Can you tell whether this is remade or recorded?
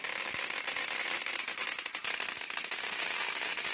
recorded